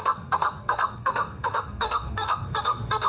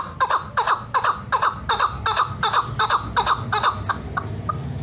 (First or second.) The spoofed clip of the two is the first